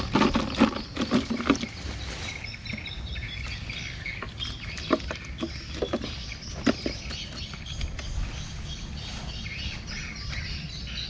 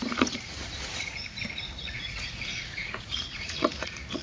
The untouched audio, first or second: first